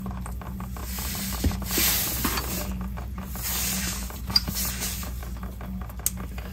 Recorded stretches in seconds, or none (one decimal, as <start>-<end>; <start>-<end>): 5.2-6.5